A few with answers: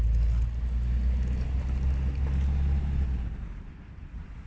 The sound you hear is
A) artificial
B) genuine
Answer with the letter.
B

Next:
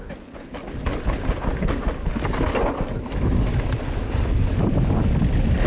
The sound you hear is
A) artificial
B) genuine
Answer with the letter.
B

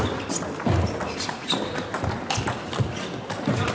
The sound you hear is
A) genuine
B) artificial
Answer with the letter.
A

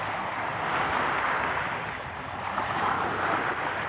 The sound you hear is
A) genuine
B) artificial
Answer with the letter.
A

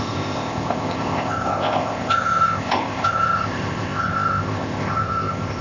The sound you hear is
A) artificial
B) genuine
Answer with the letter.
A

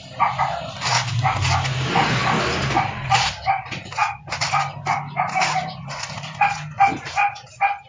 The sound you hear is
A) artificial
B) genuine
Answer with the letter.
B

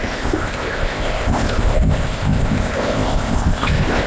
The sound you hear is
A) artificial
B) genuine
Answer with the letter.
A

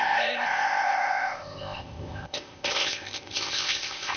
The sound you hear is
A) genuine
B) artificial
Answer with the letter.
B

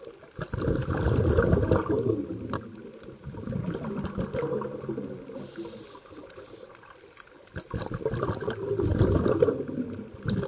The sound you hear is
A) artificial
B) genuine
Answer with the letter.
B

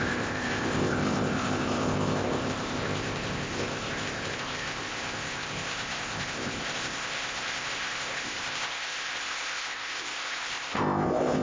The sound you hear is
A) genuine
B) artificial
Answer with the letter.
B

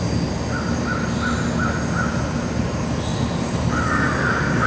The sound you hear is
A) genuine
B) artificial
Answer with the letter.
A